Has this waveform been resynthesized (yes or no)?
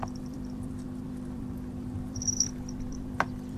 yes